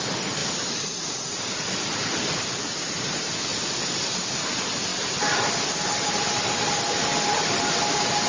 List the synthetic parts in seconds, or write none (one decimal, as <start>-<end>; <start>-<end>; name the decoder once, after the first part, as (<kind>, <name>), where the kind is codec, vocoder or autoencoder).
0.4-3.1 (vocoder, BigVGAN v2); 3.5-4.1